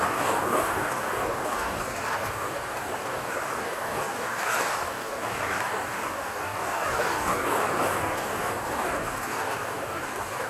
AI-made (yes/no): yes